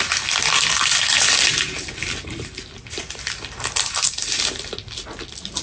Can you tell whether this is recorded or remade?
recorded